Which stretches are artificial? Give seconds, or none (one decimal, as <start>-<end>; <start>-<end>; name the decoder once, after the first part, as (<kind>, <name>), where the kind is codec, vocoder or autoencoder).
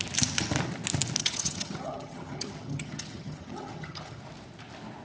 1.2-4.2 (vocoder, HiFi-GAN)